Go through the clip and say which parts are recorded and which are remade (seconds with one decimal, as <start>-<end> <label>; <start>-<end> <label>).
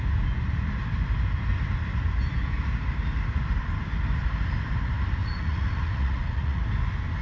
0.0-5.2 recorded; 5.2-6.6 remade; 6.6-7.2 recorded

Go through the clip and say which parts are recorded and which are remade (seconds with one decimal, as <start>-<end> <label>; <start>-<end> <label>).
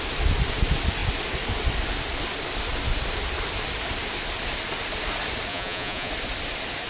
0.0-5.5 recorded; 5.5-6.1 remade; 6.1-6.9 recorded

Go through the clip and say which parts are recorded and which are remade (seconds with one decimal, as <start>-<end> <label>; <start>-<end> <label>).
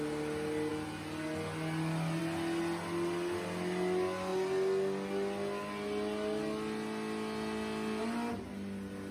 0.0-9.1 recorded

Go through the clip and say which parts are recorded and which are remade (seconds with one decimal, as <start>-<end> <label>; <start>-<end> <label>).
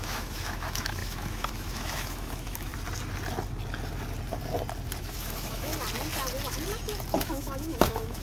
0.0-2.7 remade; 2.7-5.0 recorded; 5.0-5.7 remade; 5.7-7.2 recorded; 7.2-8.2 remade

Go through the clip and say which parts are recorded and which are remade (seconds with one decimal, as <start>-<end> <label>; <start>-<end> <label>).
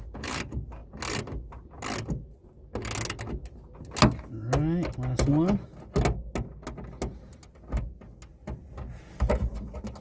0.0-10.0 recorded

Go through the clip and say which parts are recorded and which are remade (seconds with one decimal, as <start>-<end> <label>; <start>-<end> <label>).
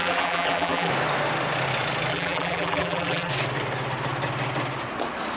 0.0-0.9 remade; 0.9-2.1 recorded; 2.1-3.3 remade; 3.3-5.4 recorded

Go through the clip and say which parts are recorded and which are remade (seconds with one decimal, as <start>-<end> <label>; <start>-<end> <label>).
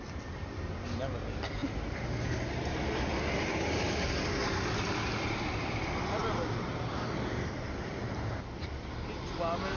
0.0-9.8 recorded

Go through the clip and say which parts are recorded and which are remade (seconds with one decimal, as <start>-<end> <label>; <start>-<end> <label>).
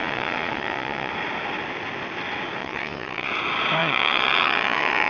0.0-1.1 remade; 1.1-2.6 recorded; 2.6-3.3 remade; 3.3-3.8 recorded; 3.8-5.1 remade